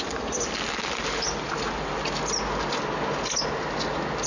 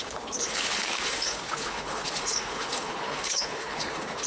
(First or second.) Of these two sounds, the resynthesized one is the second